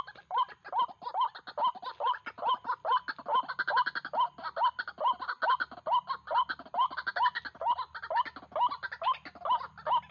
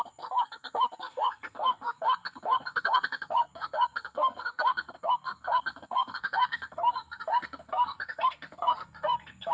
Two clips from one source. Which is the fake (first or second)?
second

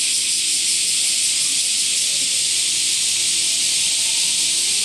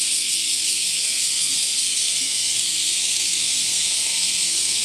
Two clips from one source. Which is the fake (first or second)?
second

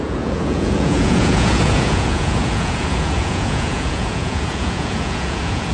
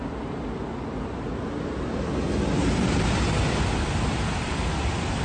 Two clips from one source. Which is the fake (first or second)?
first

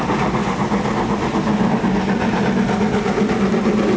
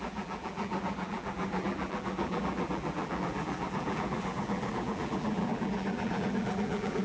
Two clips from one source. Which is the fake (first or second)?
second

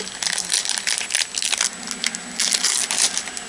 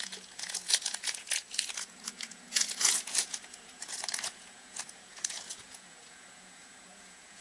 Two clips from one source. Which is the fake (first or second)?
second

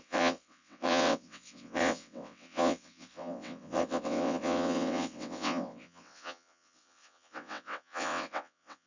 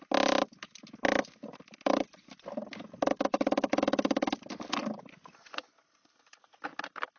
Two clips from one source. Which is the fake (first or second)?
first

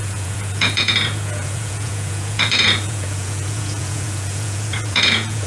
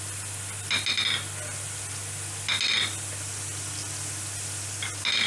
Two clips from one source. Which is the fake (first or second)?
first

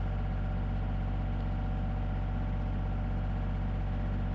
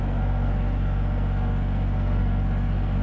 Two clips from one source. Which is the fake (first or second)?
second